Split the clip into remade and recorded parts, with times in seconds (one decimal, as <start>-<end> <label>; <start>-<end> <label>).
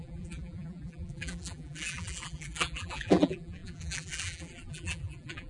0.0-5.5 remade